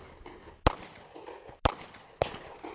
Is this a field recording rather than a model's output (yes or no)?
yes